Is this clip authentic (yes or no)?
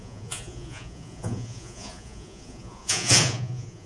no